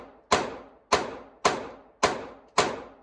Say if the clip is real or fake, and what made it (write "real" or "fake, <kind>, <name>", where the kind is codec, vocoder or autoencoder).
real